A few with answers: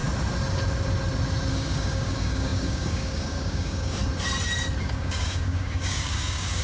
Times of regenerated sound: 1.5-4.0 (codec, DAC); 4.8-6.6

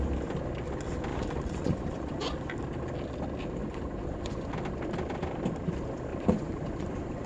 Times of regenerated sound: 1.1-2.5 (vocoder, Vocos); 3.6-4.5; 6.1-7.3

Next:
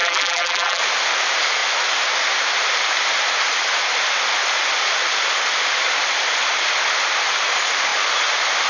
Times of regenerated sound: 0.0-0.8 (vocoder, BigVGAN v2)

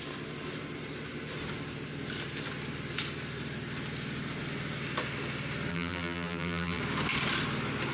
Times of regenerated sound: 5.7-6.8 (vocoder, BigVGAN v2)